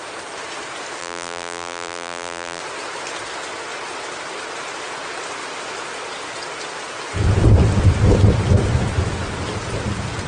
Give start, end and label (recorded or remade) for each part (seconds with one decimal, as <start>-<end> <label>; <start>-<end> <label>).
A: 0.0-1.0 recorded; 1.0-2.6 remade; 2.6-10.3 recorded